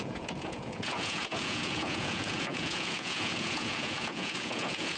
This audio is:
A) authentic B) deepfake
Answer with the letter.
B